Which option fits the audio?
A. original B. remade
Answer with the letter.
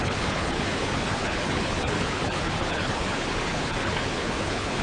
B